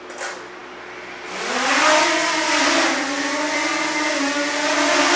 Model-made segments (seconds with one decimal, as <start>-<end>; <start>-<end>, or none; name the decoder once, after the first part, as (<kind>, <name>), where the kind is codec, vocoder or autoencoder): none